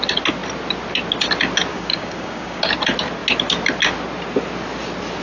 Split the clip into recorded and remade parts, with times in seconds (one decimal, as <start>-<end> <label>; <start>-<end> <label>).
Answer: 0.0-1.7 recorded; 1.7-2.6 remade; 2.6-5.2 recorded